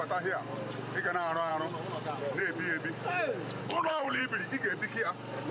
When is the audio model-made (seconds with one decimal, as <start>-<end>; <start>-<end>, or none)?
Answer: 3.6-4.2